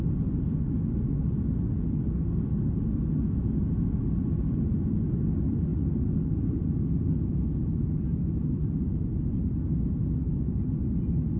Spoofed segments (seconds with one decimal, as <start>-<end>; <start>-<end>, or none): none